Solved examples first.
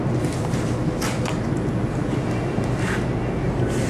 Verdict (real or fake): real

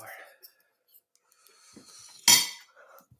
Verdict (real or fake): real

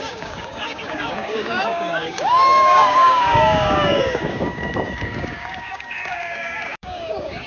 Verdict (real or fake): fake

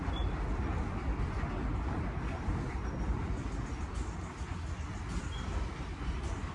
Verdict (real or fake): real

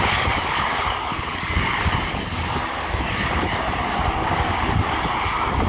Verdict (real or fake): fake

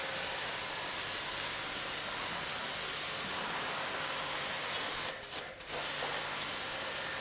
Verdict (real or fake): real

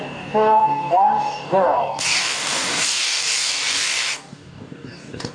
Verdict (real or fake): fake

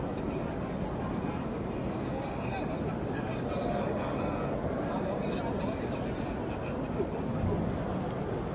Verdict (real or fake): real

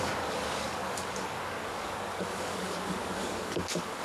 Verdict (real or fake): fake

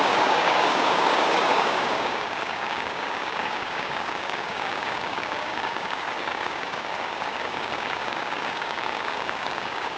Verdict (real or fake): fake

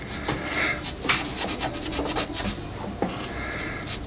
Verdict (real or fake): real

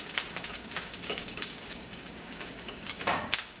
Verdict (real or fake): fake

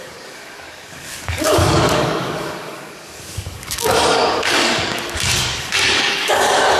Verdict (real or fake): fake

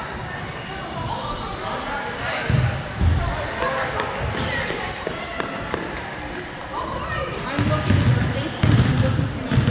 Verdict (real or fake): real